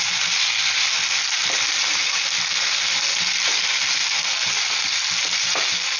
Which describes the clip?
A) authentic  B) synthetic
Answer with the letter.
A